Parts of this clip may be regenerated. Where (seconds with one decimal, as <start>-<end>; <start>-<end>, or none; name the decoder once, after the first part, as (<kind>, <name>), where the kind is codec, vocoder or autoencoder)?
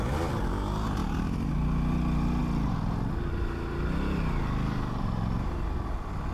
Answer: none